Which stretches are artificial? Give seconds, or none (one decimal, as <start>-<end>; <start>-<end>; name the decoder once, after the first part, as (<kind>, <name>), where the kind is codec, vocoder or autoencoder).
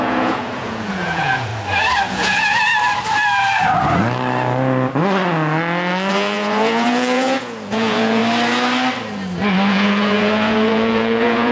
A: 0.0-1.5 (vocoder, Vocos); 2.1-2.7; 6.1-8.2; 9.7-11.5